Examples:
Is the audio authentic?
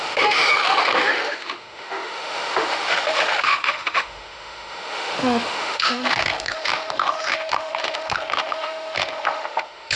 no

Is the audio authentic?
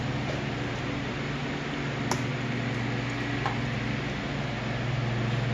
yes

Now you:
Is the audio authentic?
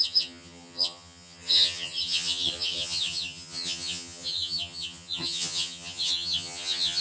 no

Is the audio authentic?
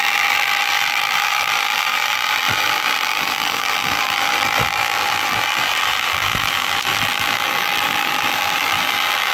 no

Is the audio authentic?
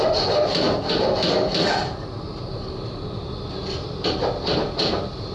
yes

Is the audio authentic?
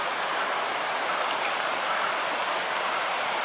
yes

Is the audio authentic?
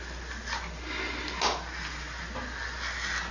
yes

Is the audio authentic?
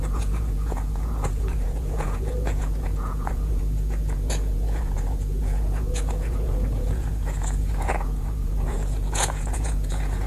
no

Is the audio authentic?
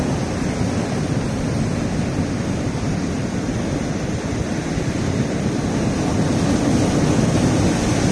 yes